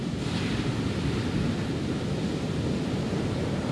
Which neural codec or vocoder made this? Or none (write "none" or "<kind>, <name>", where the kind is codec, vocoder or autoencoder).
none